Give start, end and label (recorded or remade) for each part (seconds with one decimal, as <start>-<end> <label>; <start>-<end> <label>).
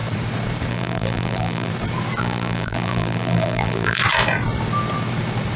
0.0-0.7 recorded; 0.7-1.7 remade; 1.7-2.2 recorded; 2.2-4.0 remade; 4.0-5.6 recorded